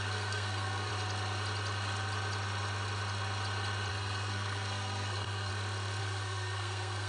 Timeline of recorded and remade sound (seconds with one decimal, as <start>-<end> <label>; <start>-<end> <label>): 0.0-0.9 remade; 0.9-3.9 recorded; 3.9-5.5 remade; 5.5-6.0 recorded; 6.0-7.1 remade